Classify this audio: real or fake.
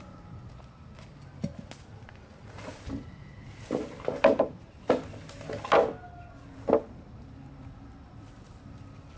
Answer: real